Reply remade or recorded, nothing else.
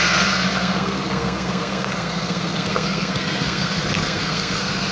remade